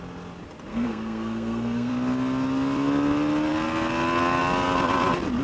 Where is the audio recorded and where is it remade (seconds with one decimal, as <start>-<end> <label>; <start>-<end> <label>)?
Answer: 0.0-0.7 recorded; 0.7-1.9 remade; 1.9-5.4 recorded